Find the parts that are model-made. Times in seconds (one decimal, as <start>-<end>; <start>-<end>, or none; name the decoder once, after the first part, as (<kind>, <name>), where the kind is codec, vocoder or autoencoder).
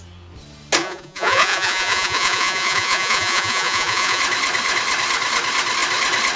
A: 0.8-4.2 (vocoder, Vocos)